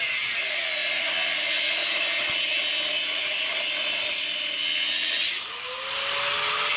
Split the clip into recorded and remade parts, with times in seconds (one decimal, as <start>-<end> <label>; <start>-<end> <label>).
0.0-1.8 remade; 1.8-5.9 recorded; 5.9-6.8 remade